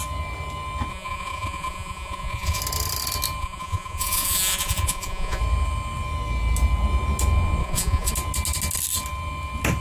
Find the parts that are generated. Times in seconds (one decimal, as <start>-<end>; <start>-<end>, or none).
0.9-2.6; 3.4-5.4; 7.6-8.1